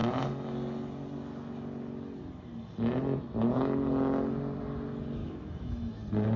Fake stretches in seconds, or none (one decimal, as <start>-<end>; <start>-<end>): 5.2-5.9